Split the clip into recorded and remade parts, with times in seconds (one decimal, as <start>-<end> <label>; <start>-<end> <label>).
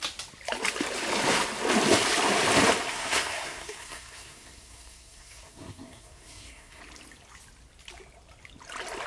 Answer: 0.0-2.9 recorded; 2.9-6.8 remade; 6.8-9.1 recorded